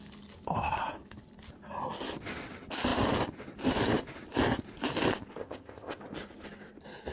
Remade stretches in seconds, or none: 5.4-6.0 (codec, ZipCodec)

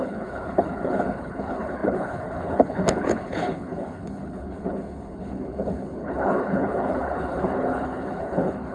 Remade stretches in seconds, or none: 0.0-8.7 (codec, HILCodec)

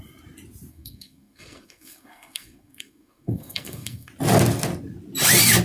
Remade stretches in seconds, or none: 0.7-4.1 (codec, SNAC)

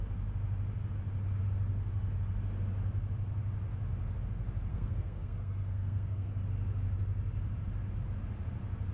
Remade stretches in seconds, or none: 4.7-6.3 (codec, SNAC)

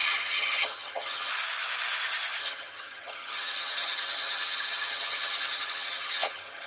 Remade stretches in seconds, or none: 0.0-1.3 (vocoder, HiFi-GAN); 2.4-6.7

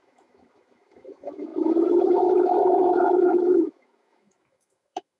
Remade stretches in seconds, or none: 0.0-5.2 (autoencoder, DAC-VAE)

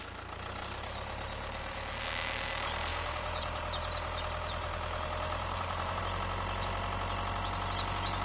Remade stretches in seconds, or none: 0.6-2.0 (vocoder, BigVGAN v2); 2.9-6.0

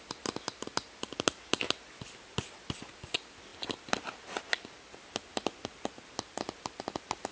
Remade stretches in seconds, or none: none